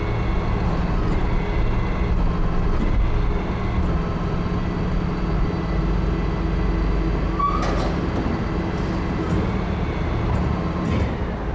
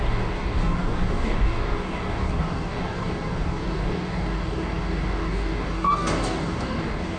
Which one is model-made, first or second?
second